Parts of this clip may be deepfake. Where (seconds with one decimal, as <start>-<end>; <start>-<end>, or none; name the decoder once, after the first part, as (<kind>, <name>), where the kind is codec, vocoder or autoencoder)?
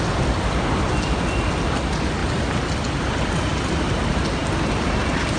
none